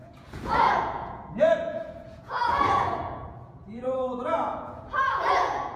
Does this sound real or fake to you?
fake